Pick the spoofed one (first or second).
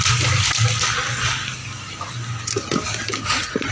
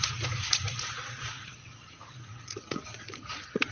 second